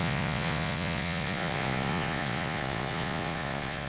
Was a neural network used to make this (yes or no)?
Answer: yes